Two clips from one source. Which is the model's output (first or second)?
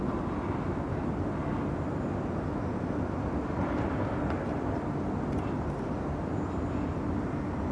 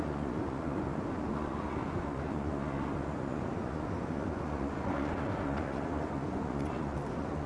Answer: second